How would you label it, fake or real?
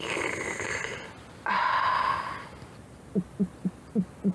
real